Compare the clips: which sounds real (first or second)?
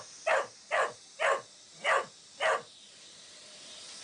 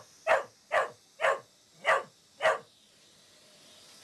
second